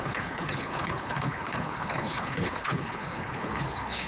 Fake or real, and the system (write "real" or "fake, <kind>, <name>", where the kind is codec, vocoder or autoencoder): fake, codec, HILCodec